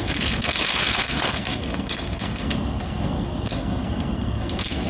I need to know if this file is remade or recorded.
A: remade